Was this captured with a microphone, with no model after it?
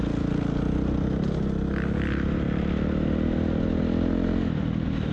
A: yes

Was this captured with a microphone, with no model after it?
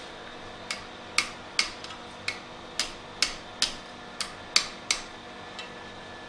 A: yes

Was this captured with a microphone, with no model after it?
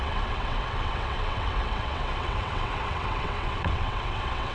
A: no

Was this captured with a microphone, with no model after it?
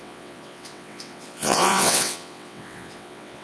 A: no